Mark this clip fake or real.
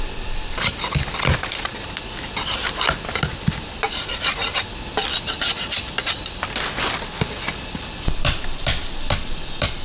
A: real